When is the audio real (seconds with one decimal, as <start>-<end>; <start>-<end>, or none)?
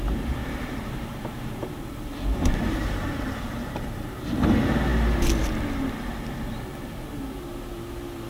0.0-0.4; 4.4-8.3